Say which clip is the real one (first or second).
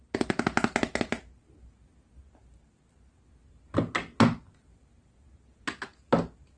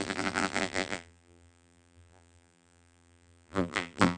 first